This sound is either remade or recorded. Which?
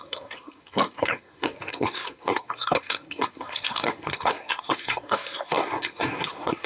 remade